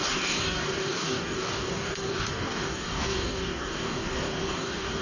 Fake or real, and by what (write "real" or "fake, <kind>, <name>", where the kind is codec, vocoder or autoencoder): fake, codec, DAC